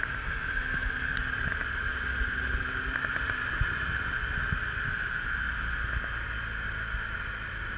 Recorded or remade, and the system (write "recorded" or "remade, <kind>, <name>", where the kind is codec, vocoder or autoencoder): recorded